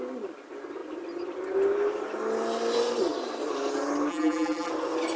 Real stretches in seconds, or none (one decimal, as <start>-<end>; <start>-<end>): 0.0-4.1; 4.7-5.2